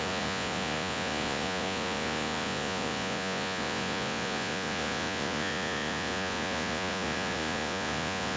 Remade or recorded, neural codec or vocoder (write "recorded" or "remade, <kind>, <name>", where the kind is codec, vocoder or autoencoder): remade, vocoder, Vocos